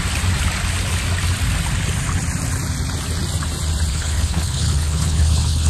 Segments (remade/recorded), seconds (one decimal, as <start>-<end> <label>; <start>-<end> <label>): 0.0-3.9 recorded; 3.9-5.7 remade